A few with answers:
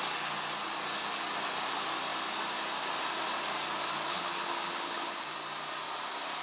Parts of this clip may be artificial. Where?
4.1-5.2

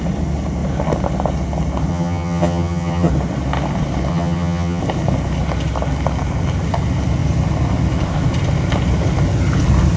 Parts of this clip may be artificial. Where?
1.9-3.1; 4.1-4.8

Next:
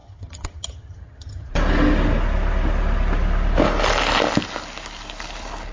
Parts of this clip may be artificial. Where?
0.0-1.5